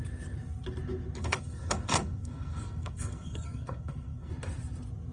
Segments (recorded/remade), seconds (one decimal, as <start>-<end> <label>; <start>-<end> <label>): 0.0-1.2 recorded; 1.2-4.3 remade; 4.3-5.1 recorded